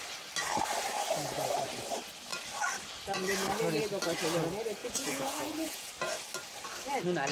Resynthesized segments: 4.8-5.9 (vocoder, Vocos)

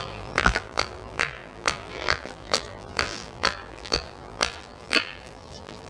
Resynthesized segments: 0.0-5.9 (vocoder, BigVGAN v2)

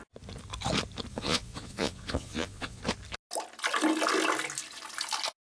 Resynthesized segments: 1.1-2.8 (vocoder, Vocos)

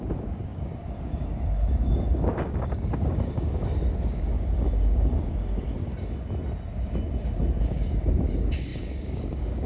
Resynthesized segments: 0.0-5.9 (codec, DAC); 7.6-9.7

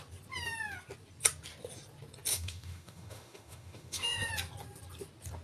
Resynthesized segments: 2.3-4.3 (autoencoder, DAC-VAE)

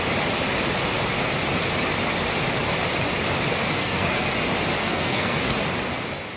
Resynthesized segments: 3.8-4.3 (codec, SNAC); 4.8-5.4

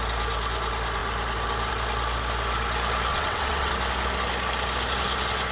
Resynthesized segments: 3.1-3.7 (vocoder, WaveNeXt)

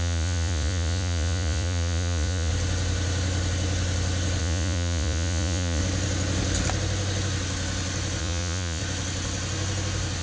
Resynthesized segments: 0.0-2.5 (vocoder, Vocos); 4.4-5.8; 8.2-8.8